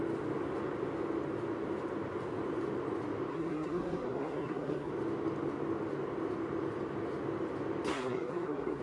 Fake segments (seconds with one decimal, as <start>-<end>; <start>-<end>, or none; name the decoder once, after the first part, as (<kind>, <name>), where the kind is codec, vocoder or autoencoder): 3.3-4.9 (codec, SNAC); 7.9-8.8